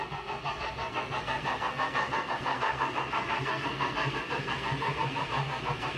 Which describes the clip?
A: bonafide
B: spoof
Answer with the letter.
B